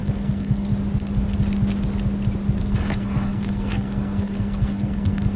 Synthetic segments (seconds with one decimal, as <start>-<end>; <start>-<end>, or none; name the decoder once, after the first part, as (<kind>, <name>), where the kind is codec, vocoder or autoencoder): 0.0-0.7 (codec, SNAC); 2.6-5.4